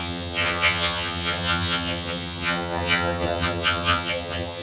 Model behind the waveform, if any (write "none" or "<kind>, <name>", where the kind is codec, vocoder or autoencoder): vocoder, HiFi-GAN